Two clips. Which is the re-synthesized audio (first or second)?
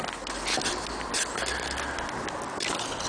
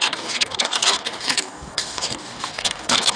second